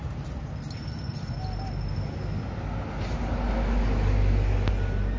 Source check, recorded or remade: recorded